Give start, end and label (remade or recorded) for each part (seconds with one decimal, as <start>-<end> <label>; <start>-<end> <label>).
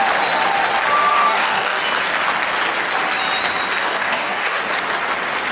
0.0-1.1 recorded; 1.1-1.8 remade; 1.8-3.8 recorded; 3.8-4.6 remade; 4.6-5.5 recorded